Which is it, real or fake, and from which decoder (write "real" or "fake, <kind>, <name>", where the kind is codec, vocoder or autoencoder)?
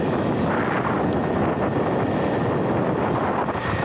real